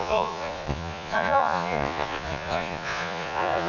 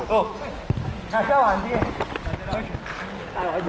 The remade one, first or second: first